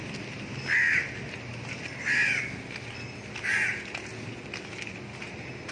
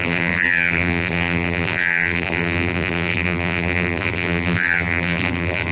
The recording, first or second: first